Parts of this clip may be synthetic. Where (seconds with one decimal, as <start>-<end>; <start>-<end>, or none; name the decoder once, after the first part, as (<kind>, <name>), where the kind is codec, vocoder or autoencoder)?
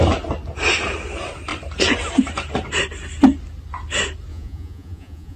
4.3-5.4 (vocoder, Vocos)